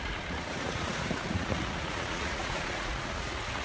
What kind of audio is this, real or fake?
fake